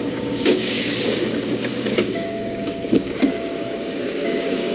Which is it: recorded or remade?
remade